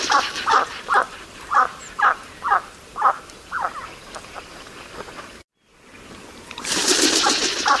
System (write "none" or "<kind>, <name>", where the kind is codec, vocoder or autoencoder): vocoder, BigVGAN v2